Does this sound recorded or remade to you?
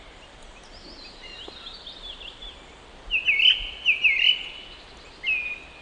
recorded